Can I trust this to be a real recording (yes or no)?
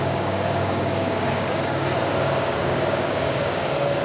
no